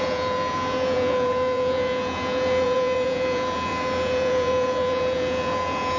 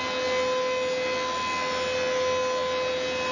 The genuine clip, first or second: second